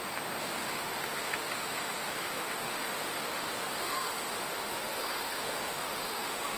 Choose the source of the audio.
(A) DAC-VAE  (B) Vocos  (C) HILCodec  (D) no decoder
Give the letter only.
A